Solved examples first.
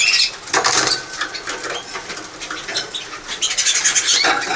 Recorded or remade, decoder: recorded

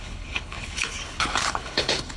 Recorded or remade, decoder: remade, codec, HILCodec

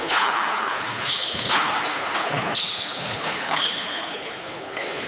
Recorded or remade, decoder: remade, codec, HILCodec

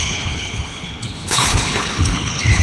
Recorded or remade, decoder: remade, codec, HILCodec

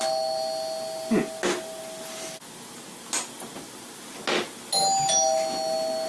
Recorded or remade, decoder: recorded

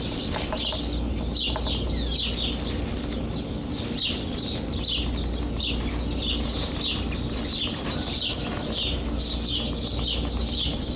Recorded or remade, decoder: recorded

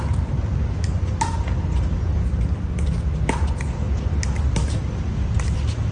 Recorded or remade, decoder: recorded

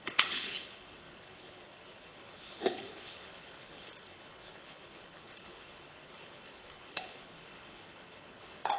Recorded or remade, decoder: remade, codec, HILCodec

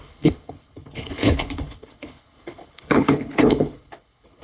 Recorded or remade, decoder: remade, codec, HILCodec